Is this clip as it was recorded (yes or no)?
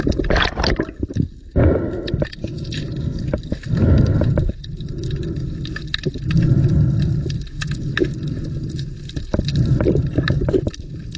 yes